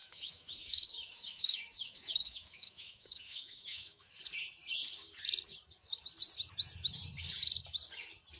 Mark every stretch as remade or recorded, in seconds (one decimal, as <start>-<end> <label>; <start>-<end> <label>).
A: 0.0-4.1 remade; 4.1-8.4 recorded